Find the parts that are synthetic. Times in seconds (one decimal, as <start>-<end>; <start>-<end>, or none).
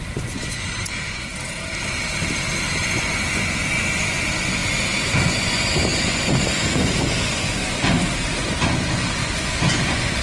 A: 0.0-1.3; 2.8-10.2